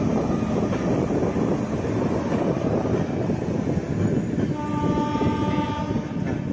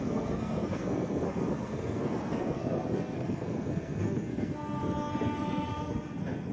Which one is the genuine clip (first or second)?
first